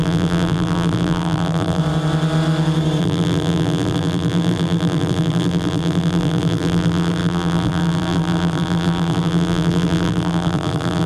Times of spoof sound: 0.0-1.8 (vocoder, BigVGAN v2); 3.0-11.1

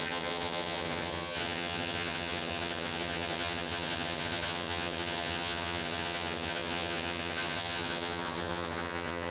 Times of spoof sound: 0.0-9.3 (vocoder, HiFi-GAN)

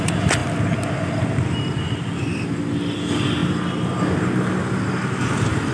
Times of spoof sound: none

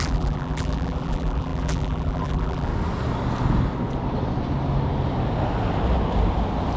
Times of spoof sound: 0.0-2.7 (vocoder, BigVGAN v2)

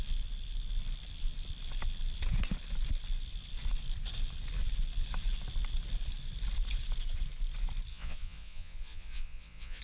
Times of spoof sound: 7.9-9.8 (vocoder, Vocos)